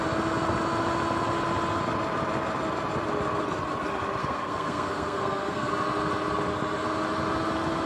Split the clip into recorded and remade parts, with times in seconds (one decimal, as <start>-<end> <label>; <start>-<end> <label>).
0.0-4.2 recorded; 4.2-5.7 remade; 5.7-7.9 recorded